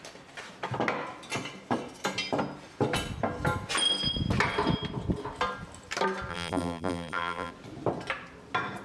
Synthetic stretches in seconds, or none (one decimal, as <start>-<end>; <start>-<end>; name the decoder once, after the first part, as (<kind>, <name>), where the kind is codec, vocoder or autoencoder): 6.3-7.5 (vocoder, BigVGAN v2)